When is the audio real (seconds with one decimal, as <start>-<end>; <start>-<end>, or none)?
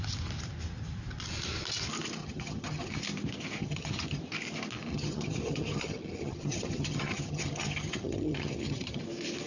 0.0-2.2; 3.0-3.6; 4.2-4.9; 9.0-9.5